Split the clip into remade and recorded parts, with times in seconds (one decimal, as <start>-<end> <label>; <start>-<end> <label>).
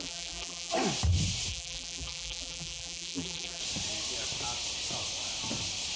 0.0-0.7 remade; 0.7-1.5 recorded; 1.5-3.6 remade; 3.6-6.0 recorded